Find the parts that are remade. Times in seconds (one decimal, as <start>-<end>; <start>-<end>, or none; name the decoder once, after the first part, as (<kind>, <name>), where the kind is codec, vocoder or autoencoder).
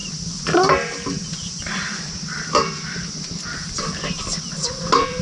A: none